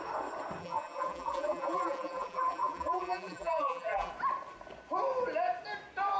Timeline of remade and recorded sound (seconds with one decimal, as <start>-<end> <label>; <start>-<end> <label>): 0.0-0.6 recorded; 0.6-4.1 remade; 4.1-6.2 recorded